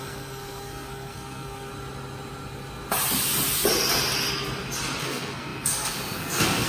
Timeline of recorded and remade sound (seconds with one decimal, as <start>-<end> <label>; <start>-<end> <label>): 0.0-1.7 remade; 1.7-5.0 recorded; 5.0-6.7 remade